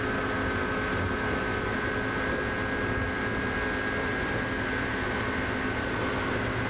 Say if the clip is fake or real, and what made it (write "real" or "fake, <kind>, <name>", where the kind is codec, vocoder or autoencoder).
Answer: real